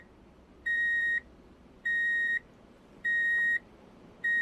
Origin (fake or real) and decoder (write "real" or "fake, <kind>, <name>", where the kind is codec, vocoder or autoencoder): fake, vocoder, BigVGAN v2